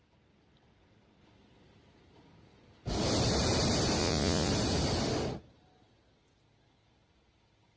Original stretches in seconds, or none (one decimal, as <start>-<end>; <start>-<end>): 0.0-4.0; 4.5-7.8